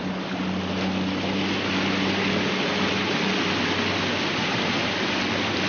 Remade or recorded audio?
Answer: recorded